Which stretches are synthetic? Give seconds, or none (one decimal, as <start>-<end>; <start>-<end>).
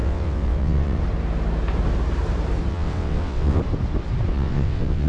0.0-1.0; 2.7-3.6; 4.3-5.1